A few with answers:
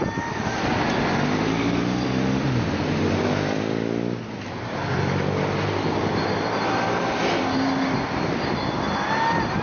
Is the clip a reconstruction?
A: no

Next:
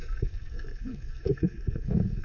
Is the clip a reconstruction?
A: yes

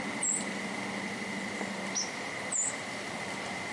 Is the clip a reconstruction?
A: no